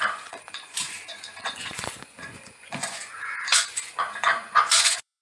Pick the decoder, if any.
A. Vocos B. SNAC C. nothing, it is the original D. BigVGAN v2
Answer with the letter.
A